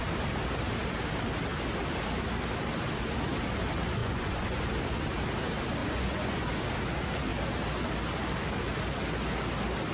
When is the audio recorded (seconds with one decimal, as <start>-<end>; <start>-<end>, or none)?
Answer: 0.0-4.0; 4.6-5.8; 6.5-9.9